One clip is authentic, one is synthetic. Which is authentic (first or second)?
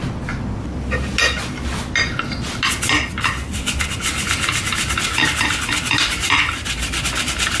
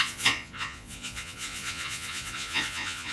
first